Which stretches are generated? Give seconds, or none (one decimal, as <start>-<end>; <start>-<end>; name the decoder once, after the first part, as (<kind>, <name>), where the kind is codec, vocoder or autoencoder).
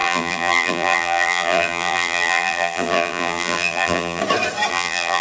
0.0-4.2 (vocoder, BigVGAN v2); 4.7-5.2